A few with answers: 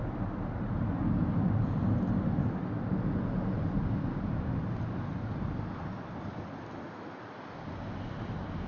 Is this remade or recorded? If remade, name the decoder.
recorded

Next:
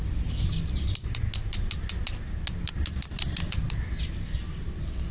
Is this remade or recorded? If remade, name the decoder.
recorded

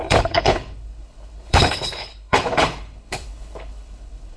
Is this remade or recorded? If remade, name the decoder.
remade, codec, HILCodec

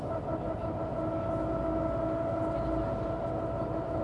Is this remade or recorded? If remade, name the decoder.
recorded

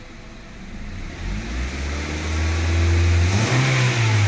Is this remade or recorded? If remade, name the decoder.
recorded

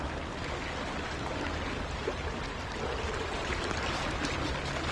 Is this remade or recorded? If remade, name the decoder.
recorded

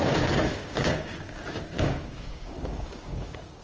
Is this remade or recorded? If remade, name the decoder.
remade, codec, DAC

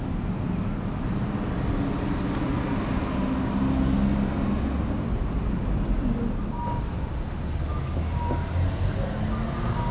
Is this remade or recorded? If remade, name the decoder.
recorded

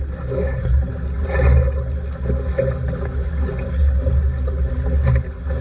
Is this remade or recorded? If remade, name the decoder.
recorded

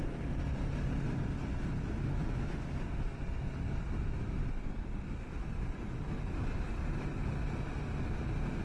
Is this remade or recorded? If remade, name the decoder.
recorded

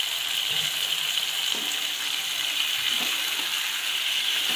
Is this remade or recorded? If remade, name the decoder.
recorded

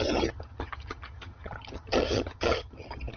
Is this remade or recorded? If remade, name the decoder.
remade, vocoder, HiFi-GAN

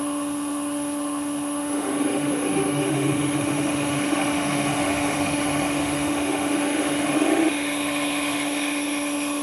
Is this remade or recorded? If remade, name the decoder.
remade, autoencoder, DAC-VAE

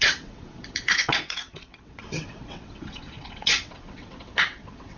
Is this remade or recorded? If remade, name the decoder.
remade, vocoder, WaveNeXt